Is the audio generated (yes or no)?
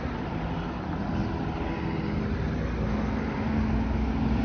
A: no